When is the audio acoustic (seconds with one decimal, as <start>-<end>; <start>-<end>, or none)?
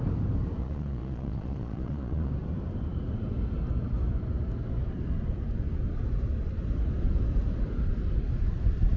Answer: 0.0-0.6; 2.3-9.0